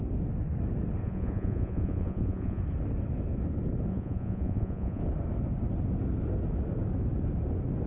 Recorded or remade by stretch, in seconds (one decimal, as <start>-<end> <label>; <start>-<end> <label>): 0.0-1.0 recorded; 1.0-2.6 remade; 2.6-3.9 recorded; 3.9-5.0 remade; 5.0-7.9 recorded